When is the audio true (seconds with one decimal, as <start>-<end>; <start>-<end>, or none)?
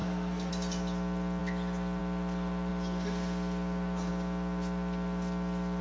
0.5-5.8